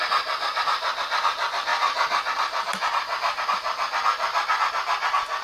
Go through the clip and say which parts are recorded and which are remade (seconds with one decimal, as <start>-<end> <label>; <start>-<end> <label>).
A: 0.0-5.4 recorded